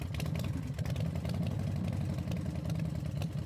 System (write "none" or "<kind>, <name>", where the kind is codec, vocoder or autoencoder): none